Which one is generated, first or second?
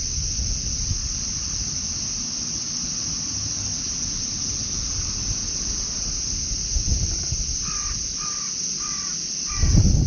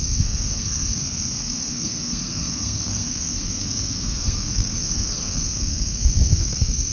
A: second